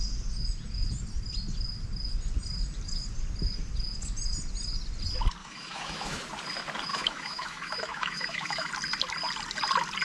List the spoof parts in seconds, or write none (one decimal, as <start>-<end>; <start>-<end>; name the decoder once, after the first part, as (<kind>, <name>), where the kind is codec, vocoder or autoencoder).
5.4-6.2 (autoencoder, DAC-VAE); 6.9-8.7

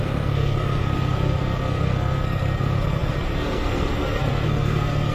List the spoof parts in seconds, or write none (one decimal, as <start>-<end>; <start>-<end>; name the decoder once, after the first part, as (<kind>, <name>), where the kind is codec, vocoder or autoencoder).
0.0-5.1 (codec, SNAC)

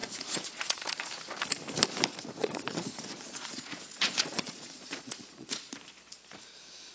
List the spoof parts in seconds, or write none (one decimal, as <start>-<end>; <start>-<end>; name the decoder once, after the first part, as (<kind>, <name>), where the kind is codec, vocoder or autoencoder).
0.0-1.1 (vocoder, Vocos); 2.4-5.7

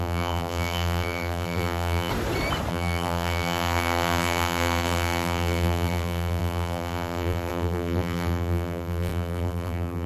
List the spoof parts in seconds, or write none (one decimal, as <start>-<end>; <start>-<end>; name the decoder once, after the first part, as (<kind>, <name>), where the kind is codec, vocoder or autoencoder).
0.0-2.1 (vocoder, BigVGAN v2); 2.7-10.1

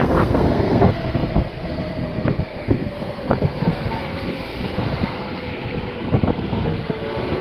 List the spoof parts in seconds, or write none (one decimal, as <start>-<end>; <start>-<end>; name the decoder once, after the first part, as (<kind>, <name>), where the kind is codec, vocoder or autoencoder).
0.0-7.4 (codec, SNAC)

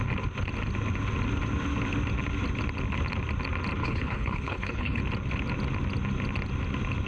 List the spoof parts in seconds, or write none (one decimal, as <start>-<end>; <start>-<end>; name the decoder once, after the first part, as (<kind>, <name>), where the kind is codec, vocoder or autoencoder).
3.8-5.0 (codec, HILCodec)